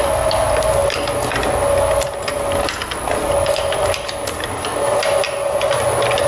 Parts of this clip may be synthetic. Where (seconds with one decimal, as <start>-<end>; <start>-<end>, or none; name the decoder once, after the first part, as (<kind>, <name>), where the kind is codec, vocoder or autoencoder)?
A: none